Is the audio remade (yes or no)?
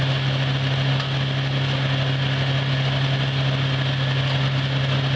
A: no